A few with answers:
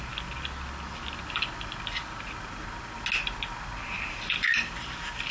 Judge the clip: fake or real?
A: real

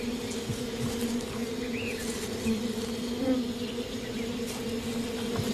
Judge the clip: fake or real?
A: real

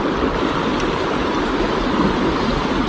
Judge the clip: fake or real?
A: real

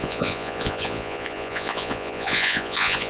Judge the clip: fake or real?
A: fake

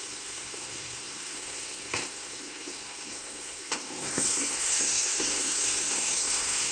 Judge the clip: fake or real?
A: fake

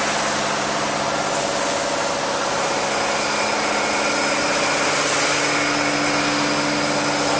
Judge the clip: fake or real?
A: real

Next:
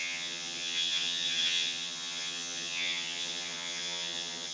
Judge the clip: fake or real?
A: fake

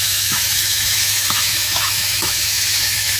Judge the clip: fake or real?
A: fake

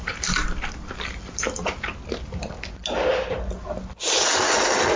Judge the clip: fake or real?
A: real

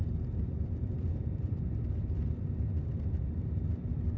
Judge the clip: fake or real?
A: fake